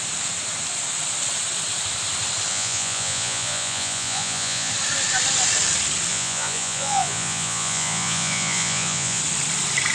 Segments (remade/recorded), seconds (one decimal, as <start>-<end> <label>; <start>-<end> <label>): 0.0-2.5 recorded; 2.5-4.7 remade; 4.7-6.1 recorded; 6.1-9.2 remade; 9.2-9.9 recorded